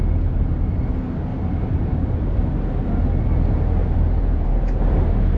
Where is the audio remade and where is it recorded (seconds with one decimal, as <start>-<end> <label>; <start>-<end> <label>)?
0.0-1.3 recorded; 1.3-2.0 remade; 2.0-3.8 recorded; 3.8-4.5 remade; 4.5-5.4 recorded